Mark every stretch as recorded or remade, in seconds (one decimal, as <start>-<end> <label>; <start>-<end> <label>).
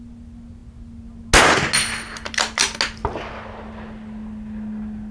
0.0-5.1 recorded